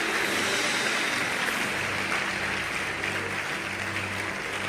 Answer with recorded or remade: recorded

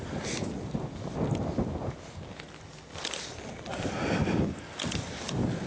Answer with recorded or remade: recorded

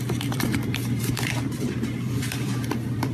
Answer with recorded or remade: remade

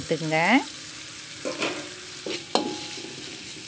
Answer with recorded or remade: recorded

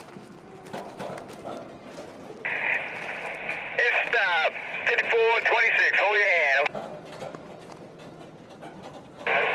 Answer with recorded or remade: remade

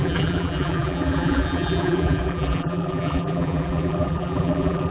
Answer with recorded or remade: remade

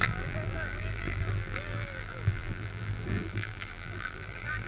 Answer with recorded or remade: remade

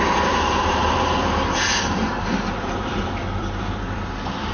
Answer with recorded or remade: remade